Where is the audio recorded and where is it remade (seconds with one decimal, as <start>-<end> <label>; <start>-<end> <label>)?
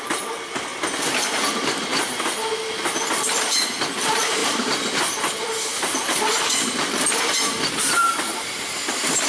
0.0-0.7 remade; 0.7-1.5 recorded; 1.5-1.9 remade; 1.9-2.9 recorded; 2.9-9.3 remade